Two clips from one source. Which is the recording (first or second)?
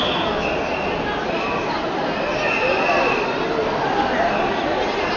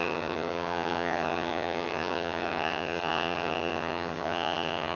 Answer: first